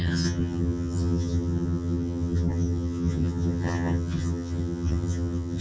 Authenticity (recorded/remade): remade